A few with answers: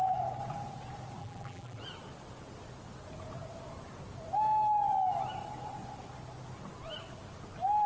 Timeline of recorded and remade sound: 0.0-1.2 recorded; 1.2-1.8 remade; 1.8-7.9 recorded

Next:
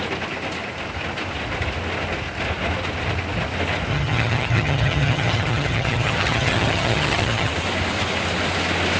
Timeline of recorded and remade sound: 0.0-3.9 recorded; 3.9-7.5 remade; 7.5-9.0 recorded